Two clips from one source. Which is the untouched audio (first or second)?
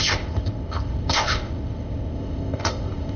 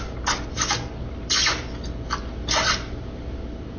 second